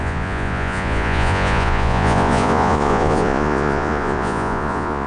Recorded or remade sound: remade